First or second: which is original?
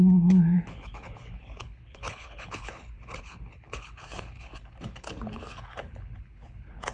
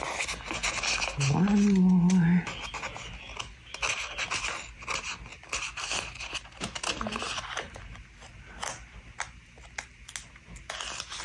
second